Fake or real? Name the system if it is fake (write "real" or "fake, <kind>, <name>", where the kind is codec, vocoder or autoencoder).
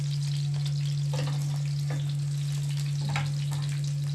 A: real